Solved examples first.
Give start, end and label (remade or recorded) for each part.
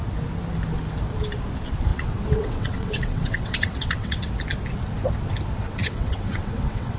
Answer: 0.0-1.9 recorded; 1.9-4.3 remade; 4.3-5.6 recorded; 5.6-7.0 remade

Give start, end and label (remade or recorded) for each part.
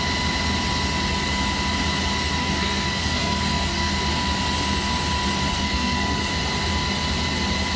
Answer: 0.0-2.4 recorded; 2.4-3.9 remade; 3.9-5.5 recorded; 5.5-6.3 remade; 6.3-7.8 recorded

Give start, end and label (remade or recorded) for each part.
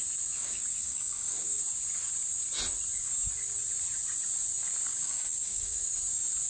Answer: 0.0-0.4 recorded; 0.4-1.6 remade; 1.6-4.9 recorded; 4.9-6.0 remade; 6.0-6.5 recorded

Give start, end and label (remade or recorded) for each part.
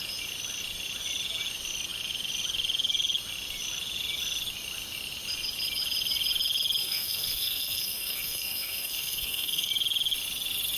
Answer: 0.0-6.8 recorded; 6.8-9.7 remade; 9.7-10.8 recorded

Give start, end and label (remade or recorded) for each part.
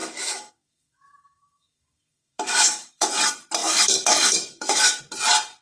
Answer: 0.0-3.2 remade; 3.2-3.6 recorded; 3.6-5.0 remade; 5.0-5.6 recorded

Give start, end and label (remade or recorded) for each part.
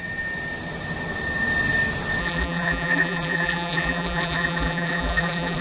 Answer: 0.0-2.2 recorded; 2.2-5.6 remade